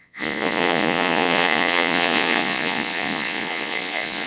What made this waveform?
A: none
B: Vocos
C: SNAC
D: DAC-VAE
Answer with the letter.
B